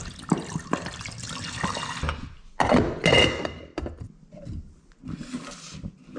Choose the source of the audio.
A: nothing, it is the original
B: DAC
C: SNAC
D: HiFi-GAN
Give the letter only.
A